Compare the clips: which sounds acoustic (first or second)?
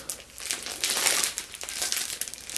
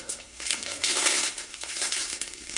first